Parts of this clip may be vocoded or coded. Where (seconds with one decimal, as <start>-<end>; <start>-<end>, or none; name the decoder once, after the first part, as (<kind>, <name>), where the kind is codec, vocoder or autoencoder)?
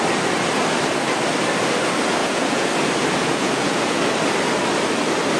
2.2-2.7 (vocoder, Vocos); 3.2-4.0